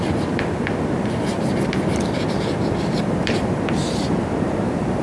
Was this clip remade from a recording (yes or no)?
yes